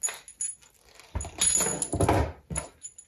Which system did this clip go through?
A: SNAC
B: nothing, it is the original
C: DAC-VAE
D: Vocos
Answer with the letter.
B